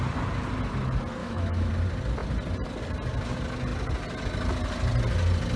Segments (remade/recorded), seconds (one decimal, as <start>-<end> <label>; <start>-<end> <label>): 0.0-1.2 recorded; 1.2-1.7 remade; 1.7-5.6 recorded